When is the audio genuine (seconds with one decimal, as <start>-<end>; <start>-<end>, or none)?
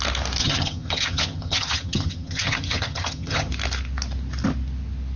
0.0-0.4; 3.5-5.2